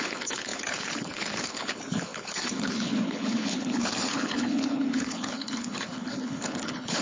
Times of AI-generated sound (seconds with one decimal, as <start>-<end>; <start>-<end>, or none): 0.0-7.0